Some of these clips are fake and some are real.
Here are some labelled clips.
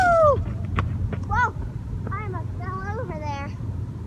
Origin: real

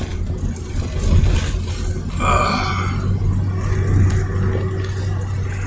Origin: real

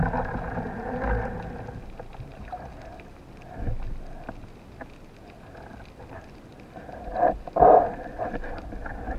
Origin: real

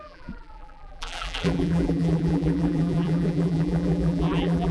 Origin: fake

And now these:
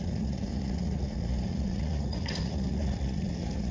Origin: fake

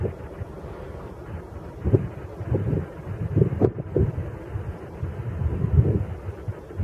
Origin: real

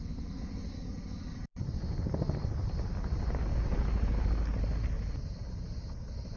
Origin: real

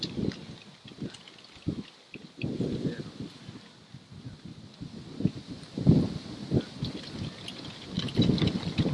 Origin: real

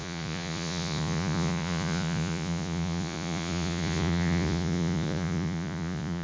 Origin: fake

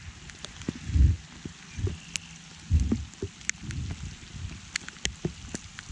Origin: real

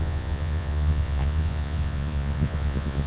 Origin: fake